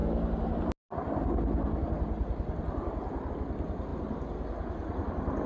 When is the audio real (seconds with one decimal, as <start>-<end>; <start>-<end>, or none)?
0.0-5.5